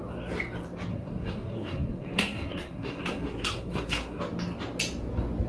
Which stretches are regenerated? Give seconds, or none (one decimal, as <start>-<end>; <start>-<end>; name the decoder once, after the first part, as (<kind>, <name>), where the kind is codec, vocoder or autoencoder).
0.9-4.2 (codec, SNAC)